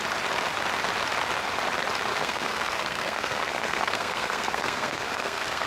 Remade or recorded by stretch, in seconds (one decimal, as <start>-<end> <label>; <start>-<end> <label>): 0.0-2.1 recorded; 2.1-5.7 remade